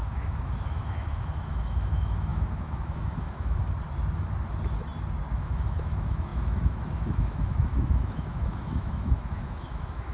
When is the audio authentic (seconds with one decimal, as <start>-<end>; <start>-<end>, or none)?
3.6-5.3